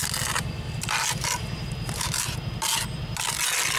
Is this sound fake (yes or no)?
no